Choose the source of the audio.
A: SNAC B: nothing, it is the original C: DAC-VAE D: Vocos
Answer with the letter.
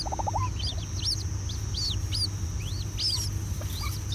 B